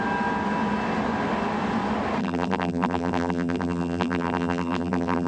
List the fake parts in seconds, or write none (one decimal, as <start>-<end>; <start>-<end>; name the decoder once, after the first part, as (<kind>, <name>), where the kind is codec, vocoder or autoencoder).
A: 2.2-5.3 (vocoder, BigVGAN v2)